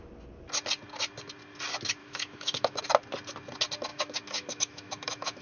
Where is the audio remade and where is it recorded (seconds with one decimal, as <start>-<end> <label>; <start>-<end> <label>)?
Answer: 0.0-2.0 recorded; 2.0-2.8 remade; 2.8-3.9 recorded; 3.9-5.4 remade